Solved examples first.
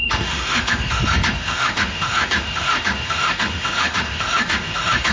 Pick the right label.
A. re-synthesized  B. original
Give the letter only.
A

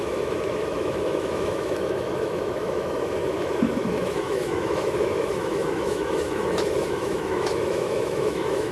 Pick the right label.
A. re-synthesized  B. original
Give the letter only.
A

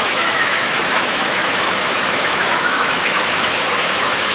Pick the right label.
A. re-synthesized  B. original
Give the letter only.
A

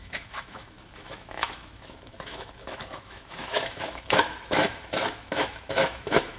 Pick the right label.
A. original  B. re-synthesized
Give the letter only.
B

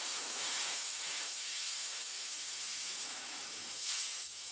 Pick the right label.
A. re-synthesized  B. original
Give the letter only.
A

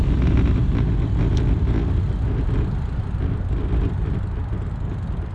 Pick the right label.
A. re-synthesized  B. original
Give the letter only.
B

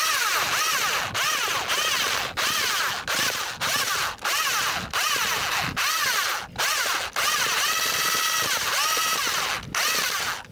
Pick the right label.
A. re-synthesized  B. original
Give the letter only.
B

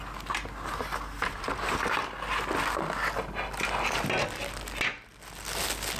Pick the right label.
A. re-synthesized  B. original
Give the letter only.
B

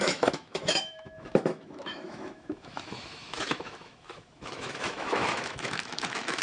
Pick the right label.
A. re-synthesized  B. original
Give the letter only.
A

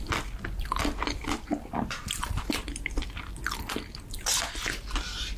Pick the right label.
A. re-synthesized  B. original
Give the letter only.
B